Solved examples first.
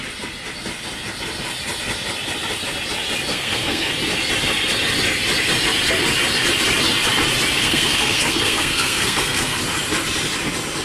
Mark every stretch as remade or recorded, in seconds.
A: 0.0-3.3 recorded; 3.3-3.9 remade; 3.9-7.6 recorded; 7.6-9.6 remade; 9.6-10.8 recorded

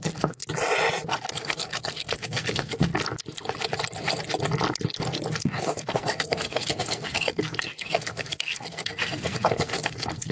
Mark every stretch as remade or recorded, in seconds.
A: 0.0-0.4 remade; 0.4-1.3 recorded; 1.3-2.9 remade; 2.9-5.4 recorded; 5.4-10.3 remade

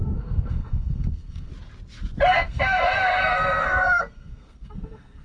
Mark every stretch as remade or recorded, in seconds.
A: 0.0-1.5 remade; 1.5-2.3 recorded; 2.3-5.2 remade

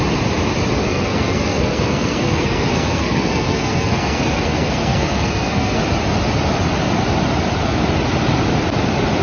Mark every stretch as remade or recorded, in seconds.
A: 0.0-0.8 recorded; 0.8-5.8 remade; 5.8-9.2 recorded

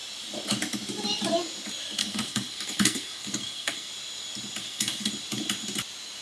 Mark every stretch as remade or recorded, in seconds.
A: 0.0-2.0 recorded; 2.0-3.9 remade; 3.9-4.6 recorded; 4.6-5.1 remade; 5.1-6.2 recorded

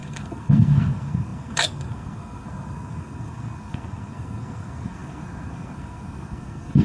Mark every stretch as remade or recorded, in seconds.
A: 0.0-6.8 remade